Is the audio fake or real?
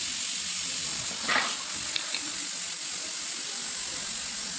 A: real